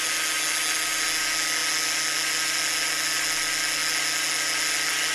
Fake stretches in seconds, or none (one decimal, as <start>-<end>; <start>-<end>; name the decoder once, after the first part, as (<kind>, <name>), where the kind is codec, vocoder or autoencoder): none